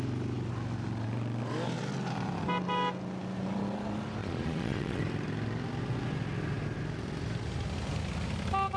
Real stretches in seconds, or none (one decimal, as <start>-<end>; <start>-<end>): 0.0-4.2; 5.0-8.8